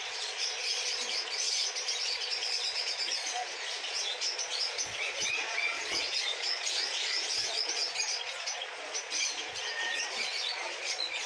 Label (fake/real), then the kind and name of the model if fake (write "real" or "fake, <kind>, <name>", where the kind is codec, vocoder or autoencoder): fake, vocoder, Vocos